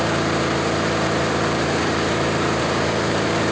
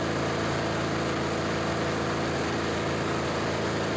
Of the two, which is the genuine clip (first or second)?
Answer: second